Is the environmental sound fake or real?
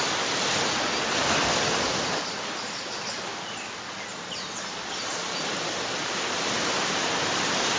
real